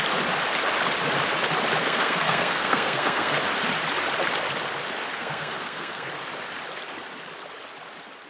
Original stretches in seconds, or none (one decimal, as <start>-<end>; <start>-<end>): 0.0-1.8; 3.4-5.1; 6.1-8.3